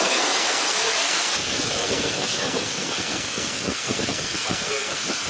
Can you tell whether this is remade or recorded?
remade